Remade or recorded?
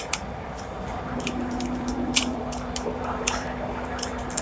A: remade